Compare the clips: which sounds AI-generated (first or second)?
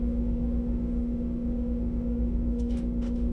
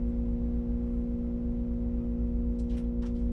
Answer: first